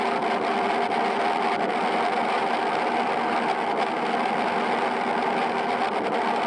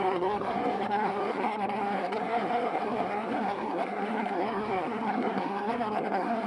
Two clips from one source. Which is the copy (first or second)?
second